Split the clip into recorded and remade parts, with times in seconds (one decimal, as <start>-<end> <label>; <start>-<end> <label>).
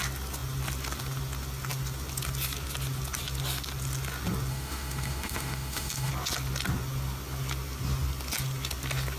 0.0-4.5 recorded; 4.5-6.1 remade; 6.1-9.2 recorded